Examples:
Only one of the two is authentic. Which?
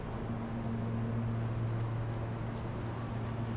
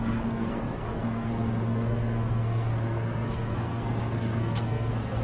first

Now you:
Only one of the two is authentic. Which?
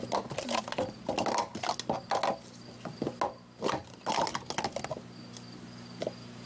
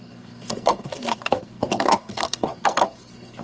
first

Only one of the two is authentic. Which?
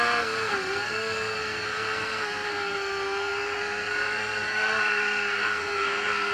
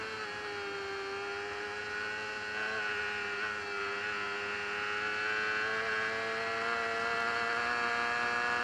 second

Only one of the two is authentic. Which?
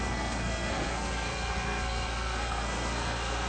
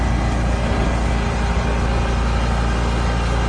second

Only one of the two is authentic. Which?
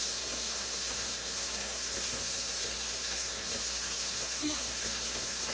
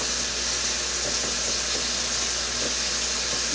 second